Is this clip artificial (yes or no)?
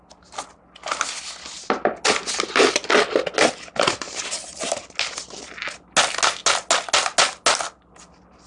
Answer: no